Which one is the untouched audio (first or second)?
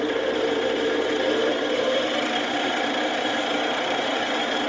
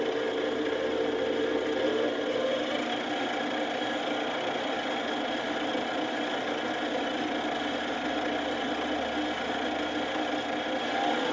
second